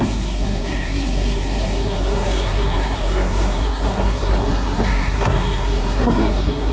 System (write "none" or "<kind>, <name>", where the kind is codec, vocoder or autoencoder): codec, SNAC